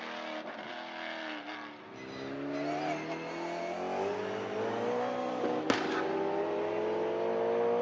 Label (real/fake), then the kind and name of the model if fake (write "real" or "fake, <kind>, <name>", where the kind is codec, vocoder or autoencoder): real